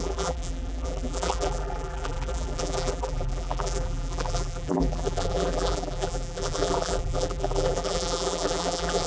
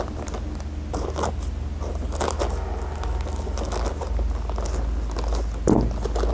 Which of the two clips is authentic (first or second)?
second